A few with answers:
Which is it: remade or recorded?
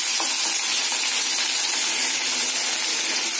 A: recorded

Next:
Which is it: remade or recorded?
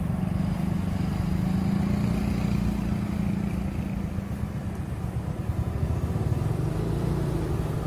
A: recorded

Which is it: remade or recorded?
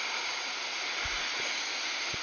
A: recorded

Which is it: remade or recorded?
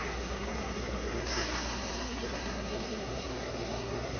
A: remade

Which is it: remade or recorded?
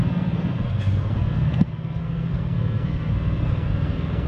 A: remade